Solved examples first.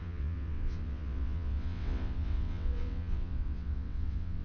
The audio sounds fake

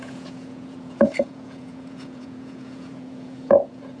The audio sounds fake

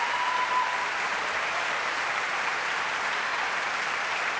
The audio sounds fake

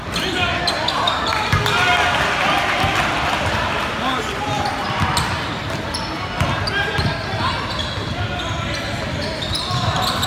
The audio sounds real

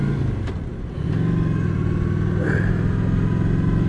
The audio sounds real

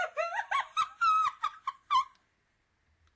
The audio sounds real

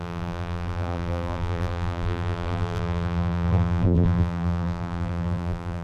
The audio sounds fake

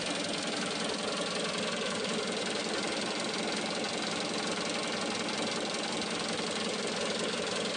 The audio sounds real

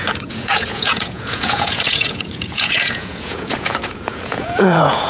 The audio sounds fake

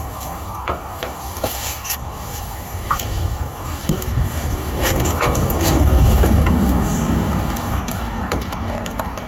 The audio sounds fake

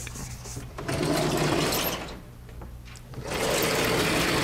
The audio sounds real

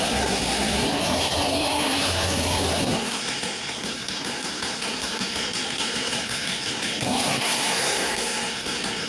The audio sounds fake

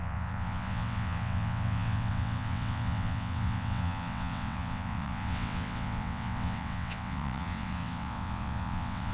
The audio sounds fake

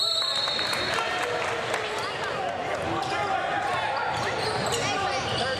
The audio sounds real